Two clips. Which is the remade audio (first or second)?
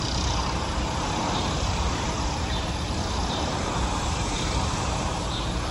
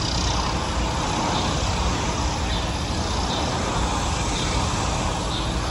first